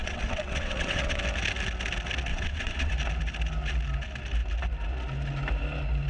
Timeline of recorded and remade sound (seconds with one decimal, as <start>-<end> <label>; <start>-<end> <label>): 0.0-1.2 remade; 1.2-2.3 recorded; 2.3-2.9 remade; 2.9-6.1 recorded